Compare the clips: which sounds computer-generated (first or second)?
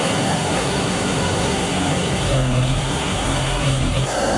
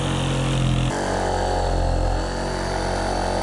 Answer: first